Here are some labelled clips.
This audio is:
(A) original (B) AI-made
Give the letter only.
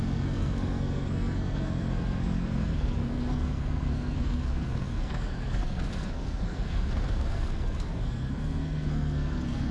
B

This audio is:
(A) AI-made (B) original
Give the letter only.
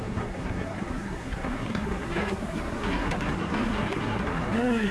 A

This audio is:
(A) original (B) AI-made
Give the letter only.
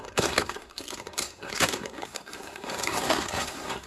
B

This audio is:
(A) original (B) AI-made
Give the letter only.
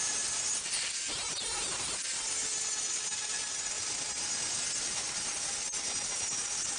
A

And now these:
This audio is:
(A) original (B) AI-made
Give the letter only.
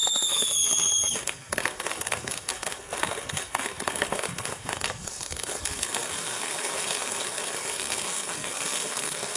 B